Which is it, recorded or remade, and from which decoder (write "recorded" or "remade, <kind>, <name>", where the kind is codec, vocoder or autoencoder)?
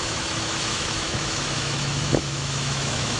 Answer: remade, autoencoder, DAC-VAE